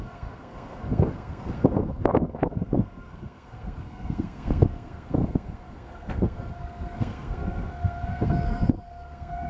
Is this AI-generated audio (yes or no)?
yes